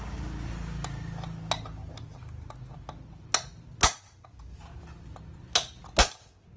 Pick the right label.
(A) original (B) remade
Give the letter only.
A